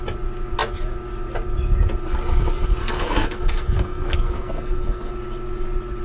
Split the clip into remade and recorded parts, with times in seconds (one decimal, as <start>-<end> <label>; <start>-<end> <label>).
0.0-2.8 recorded; 2.8-5.1 remade; 5.1-6.0 recorded